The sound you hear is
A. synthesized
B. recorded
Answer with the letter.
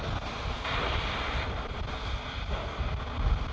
B